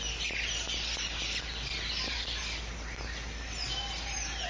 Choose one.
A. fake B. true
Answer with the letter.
B